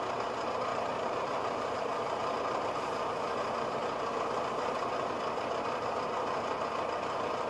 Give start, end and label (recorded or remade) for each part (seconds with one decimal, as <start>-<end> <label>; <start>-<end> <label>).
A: 0.0-0.7 recorded; 0.7-2.4 remade; 2.4-7.5 recorded